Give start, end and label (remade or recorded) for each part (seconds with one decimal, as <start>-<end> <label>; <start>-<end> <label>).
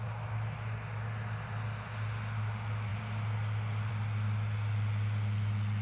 0.0-5.8 recorded